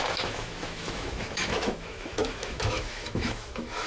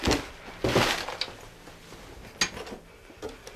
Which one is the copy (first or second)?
first